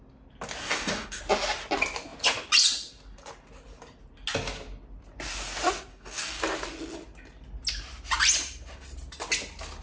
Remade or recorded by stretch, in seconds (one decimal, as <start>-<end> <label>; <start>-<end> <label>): 0.0-0.6 recorded; 0.6-1.2 remade; 1.2-5.9 recorded; 5.9-6.4 remade; 6.4-9.8 recorded